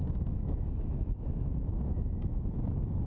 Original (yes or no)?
no